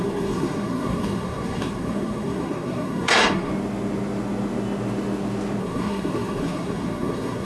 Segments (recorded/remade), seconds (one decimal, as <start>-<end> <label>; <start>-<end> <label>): 0.0-3.5 remade; 3.5-5.6 recorded; 5.6-7.4 remade

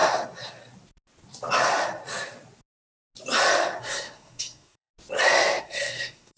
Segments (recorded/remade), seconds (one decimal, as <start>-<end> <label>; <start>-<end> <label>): 0.0-3.8 recorded; 3.8-4.9 remade; 4.9-5.6 recorded; 5.6-6.4 remade

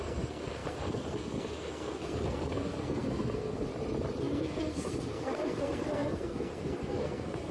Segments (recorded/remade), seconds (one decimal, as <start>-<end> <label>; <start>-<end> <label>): 0.0-3.7 remade; 3.7-4.2 recorded; 4.2-7.5 remade

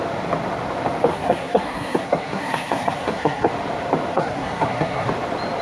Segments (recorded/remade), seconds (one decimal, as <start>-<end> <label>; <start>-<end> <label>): 0.0-1.1 recorded; 1.1-3.5 remade; 3.5-4.1 recorded; 4.1-5.1 remade; 5.1-5.6 recorded

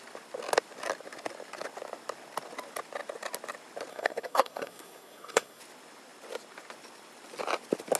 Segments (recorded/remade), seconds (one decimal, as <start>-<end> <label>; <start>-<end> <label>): 0.0-3.9 recorded; 3.9-5.6 remade; 5.6-8.0 recorded

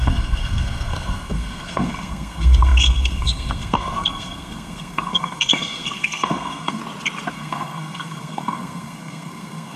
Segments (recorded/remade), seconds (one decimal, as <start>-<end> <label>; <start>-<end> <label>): 0.0-6.8 remade; 6.8-7.3 recorded; 7.3-9.8 remade

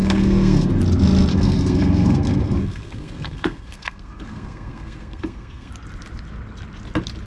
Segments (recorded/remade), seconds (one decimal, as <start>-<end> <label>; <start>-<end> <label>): 0.0-0.8 remade; 0.8-1.3 recorded; 1.3-5.7 remade; 5.7-7.3 recorded

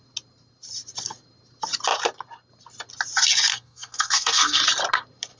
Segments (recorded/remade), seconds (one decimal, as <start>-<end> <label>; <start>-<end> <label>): 0.0-3.5 recorded; 3.5-4.6 remade; 4.6-5.4 recorded